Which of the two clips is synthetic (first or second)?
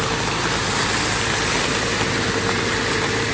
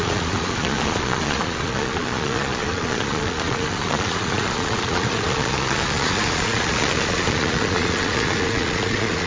second